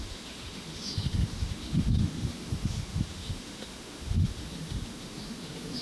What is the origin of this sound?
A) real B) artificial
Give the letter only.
B